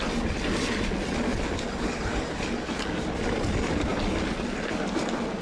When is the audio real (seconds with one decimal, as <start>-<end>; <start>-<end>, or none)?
0.0-5.4